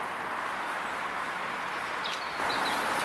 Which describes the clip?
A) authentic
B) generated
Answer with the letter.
A